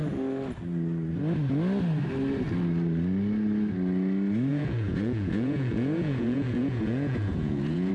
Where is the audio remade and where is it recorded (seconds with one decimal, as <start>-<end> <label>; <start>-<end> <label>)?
0.0-4.5 recorded; 4.5-7.9 remade